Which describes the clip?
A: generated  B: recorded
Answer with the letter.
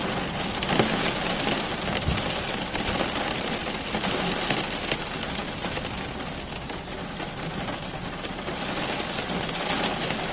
B